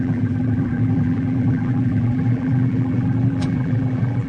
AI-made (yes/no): yes